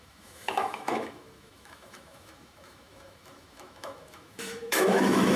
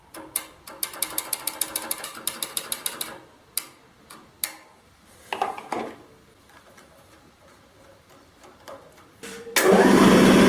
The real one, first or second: second